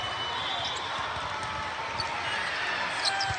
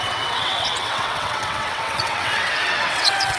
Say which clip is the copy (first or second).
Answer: second